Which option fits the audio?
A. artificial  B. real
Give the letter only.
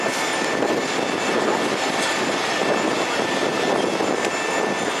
B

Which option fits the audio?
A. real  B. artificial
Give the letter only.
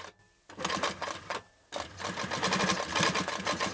A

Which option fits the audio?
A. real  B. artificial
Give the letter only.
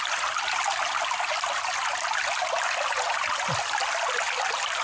A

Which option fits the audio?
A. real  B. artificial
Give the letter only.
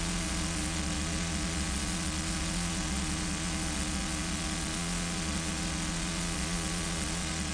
B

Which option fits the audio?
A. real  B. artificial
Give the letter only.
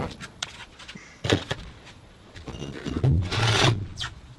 B